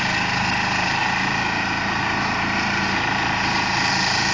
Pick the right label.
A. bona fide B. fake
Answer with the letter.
A